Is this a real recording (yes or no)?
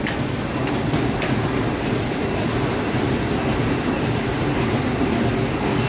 no